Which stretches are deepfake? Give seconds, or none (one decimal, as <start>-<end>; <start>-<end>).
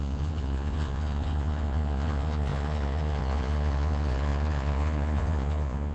0.0-5.9